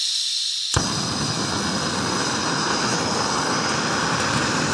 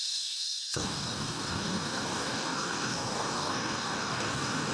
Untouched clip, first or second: first